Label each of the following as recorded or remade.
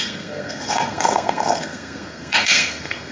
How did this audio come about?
remade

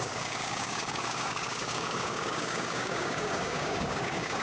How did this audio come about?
remade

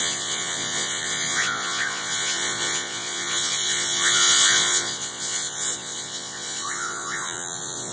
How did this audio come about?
remade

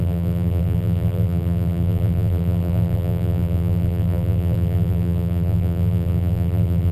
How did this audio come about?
remade